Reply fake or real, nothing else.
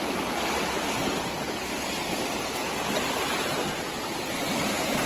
real